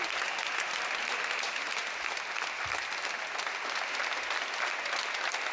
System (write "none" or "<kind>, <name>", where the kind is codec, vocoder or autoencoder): none